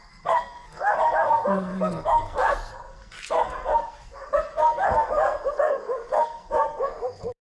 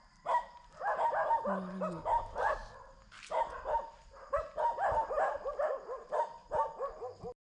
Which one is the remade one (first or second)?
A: first